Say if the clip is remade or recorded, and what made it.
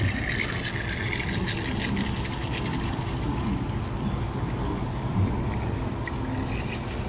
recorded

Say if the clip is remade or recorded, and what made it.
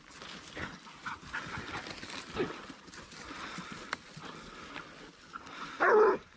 recorded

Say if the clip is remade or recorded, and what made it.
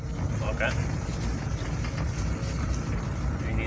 recorded